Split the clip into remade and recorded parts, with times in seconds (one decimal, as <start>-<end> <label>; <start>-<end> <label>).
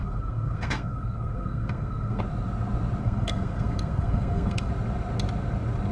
0.0-2.2 remade; 2.2-3.0 recorded; 3.0-4.7 remade; 4.7-5.9 recorded